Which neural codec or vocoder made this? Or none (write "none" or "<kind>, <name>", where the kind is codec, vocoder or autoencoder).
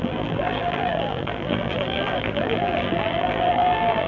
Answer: vocoder, BigVGAN v2